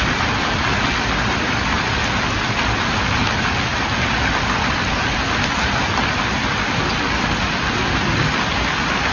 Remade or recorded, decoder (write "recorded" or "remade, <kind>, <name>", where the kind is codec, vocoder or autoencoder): recorded